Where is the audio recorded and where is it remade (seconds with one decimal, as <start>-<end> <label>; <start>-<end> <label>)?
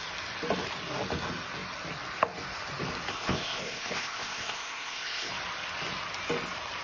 0.0-3.1 recorded; 3.1-5.3 remade; 5.3-6.8 recorded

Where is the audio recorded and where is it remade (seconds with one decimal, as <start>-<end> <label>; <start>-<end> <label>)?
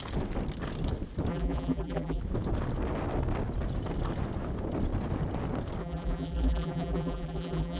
0.0-1.3 recorded; 1.3-2.2 remade; 2.2-5.8 recorded; 5.8-7.8 remade